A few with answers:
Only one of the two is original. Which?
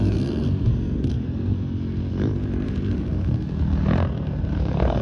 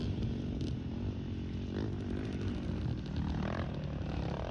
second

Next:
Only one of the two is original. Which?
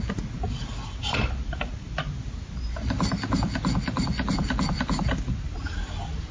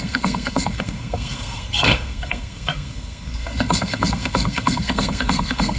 first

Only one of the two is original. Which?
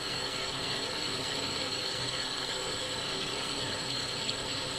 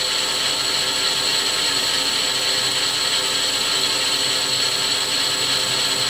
second